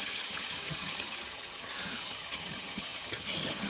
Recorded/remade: remade